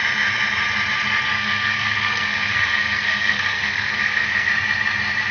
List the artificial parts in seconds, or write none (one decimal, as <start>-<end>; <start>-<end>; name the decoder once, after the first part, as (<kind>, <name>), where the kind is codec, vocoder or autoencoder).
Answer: 1.3-4.5 (codec, SNAC)